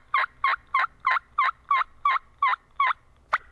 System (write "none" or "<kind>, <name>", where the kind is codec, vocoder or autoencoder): none